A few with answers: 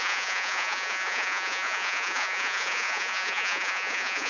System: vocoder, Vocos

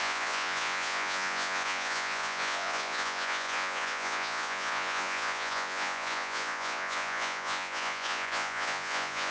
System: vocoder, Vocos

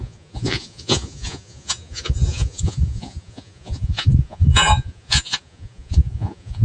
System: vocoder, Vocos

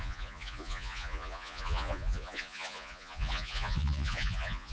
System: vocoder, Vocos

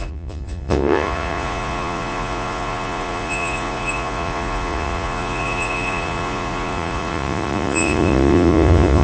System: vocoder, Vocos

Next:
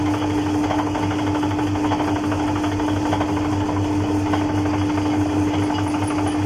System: none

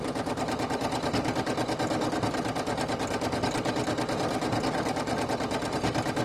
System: none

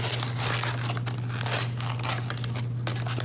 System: none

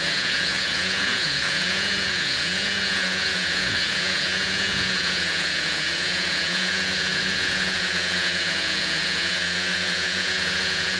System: vocoder, Vocos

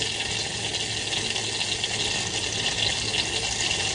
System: none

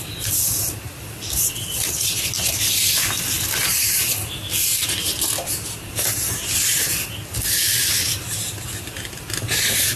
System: none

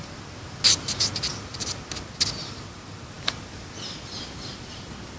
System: none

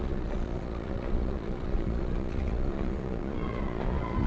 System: vocoder, Vocos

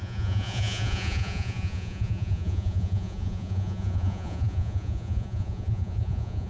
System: vocoder, Vocos